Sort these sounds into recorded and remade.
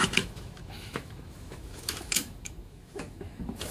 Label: remade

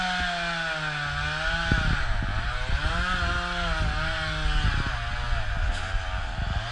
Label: recorded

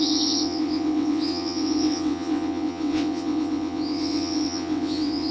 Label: remade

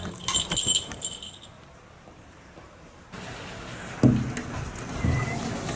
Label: recorded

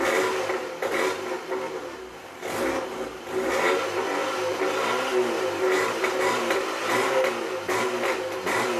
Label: remade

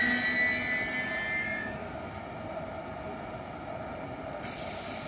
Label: recorded